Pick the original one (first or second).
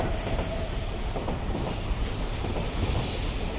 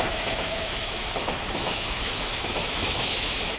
first